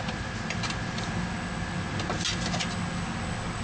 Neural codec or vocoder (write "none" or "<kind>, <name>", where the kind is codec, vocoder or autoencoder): none